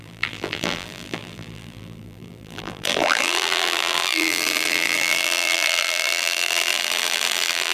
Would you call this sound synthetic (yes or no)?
yes